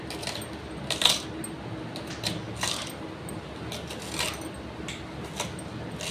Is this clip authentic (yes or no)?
yes